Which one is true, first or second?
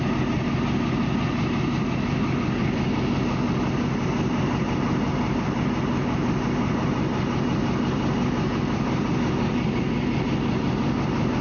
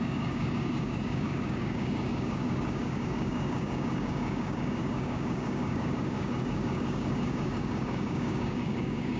first